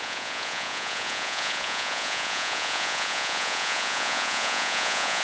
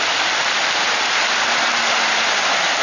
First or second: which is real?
second